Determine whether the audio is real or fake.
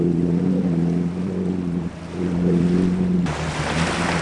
real